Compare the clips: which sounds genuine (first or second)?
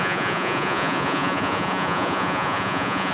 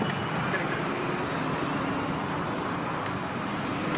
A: second